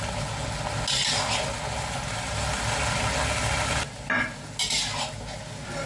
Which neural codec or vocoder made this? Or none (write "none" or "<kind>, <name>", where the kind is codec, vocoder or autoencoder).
none